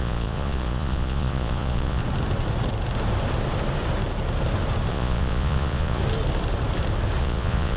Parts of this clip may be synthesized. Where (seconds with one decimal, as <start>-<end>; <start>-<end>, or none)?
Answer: 0.0-2.0; 4.9-6.0; 7.2-7.8